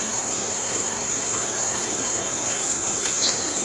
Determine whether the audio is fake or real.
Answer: fake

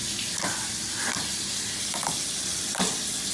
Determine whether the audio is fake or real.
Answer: real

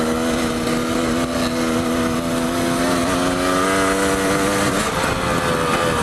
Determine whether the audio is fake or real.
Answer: real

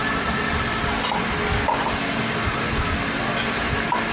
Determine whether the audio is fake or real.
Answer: real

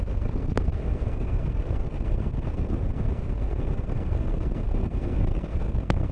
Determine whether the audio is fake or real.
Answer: fake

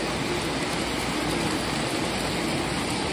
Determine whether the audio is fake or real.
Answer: real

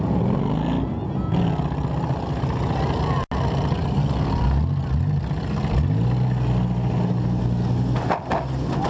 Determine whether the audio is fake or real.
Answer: real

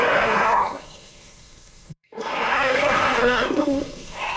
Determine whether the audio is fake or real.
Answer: fake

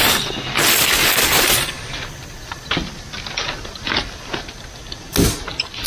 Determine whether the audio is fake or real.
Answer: real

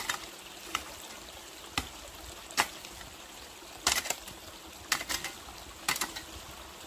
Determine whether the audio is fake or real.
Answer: real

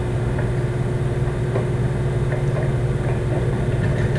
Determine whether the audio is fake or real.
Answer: real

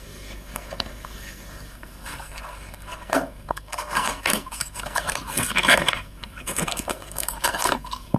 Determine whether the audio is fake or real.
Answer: fake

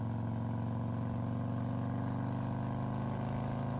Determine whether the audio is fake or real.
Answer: real